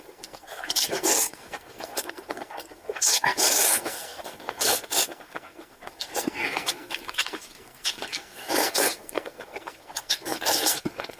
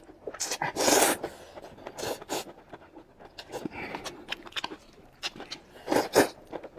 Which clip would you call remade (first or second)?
first